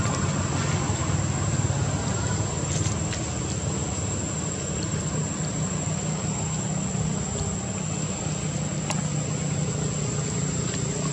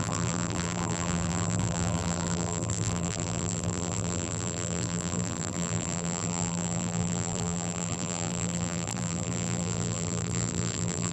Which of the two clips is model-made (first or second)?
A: second